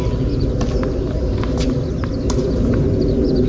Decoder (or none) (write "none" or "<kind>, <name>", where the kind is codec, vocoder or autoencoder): none